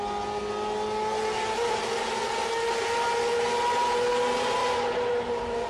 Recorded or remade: recorded